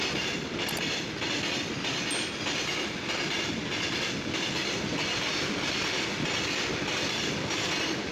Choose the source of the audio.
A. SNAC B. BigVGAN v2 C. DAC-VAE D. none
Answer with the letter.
D